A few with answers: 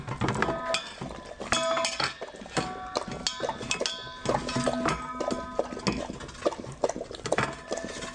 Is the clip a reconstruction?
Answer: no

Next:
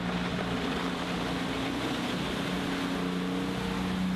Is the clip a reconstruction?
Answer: no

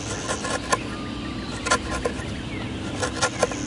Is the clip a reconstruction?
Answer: no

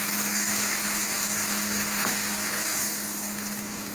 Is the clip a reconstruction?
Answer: yes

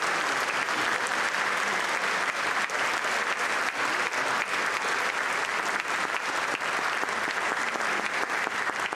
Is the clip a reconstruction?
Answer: no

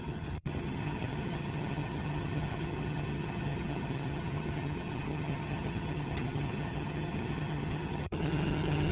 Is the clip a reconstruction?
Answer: yes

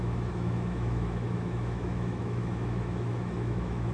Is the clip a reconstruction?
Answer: yes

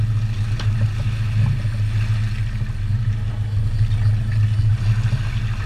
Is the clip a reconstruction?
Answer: no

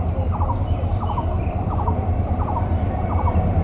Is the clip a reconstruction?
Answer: yes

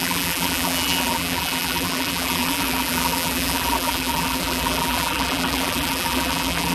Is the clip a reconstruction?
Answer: yes